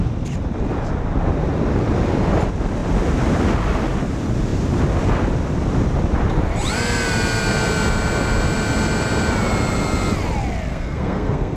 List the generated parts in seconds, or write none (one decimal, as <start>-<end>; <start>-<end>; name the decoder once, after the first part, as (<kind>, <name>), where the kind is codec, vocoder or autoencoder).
10.7-11.6 (codec, SNAC)